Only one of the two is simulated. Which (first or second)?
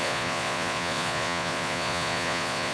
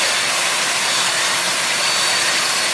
first